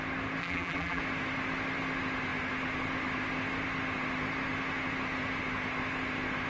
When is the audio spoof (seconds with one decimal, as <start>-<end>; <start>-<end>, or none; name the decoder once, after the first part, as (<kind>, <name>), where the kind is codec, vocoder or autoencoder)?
0.4-1.0 (vocoder, BigVGAN v2)